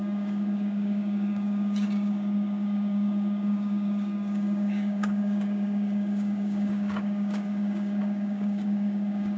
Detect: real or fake fake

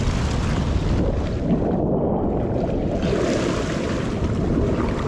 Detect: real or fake real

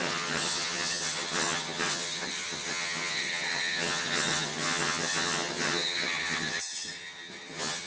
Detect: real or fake fake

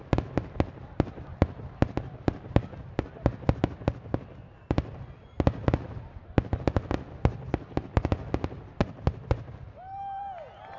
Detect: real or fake real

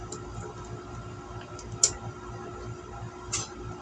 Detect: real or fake real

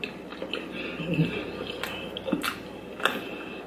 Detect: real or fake real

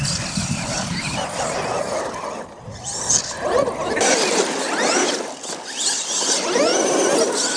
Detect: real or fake real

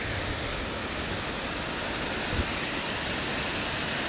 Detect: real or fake real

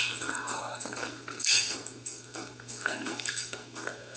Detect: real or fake fake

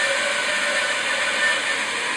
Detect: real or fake real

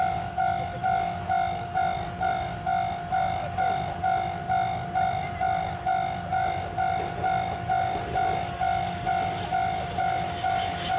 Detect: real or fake real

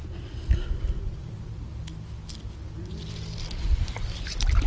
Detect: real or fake real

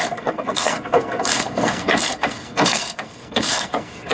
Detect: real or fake fake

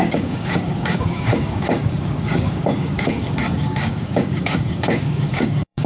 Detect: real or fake fake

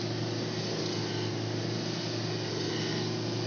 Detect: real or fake real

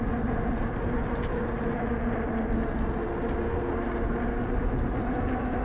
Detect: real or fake real